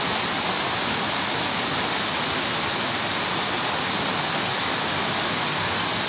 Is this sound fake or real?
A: real